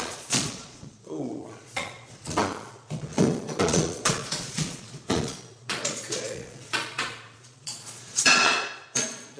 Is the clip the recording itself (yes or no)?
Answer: no